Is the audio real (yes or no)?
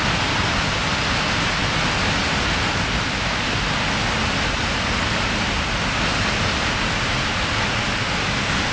yes